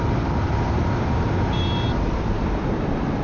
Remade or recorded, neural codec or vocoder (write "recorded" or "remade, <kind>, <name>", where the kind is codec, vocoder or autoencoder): remade, vocoder, BigVGAN v2